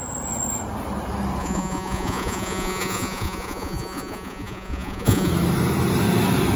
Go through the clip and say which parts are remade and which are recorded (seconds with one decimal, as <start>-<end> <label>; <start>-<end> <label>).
0.0-1.4 recorded; 1.4-5.3 remade; 5.3-6.6 recorded